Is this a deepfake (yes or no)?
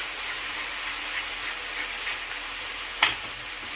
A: no